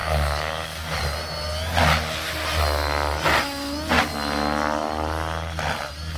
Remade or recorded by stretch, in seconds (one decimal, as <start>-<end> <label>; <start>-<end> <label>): 0.0-1.0 remade; 1.0-6.2 recorded